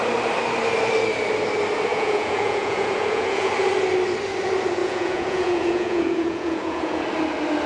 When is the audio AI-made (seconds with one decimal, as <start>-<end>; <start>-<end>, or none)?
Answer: 1.9-3.5; 4.8-7.0